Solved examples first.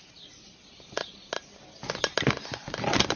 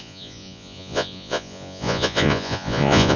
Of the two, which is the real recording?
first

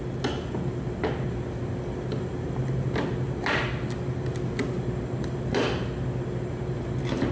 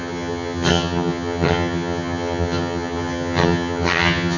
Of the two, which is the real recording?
first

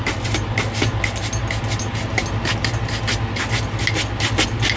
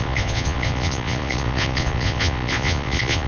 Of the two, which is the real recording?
first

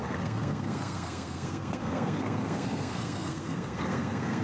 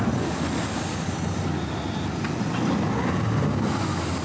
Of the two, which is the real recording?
second